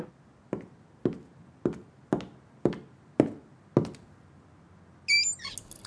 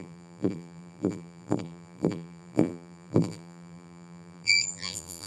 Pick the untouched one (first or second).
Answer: first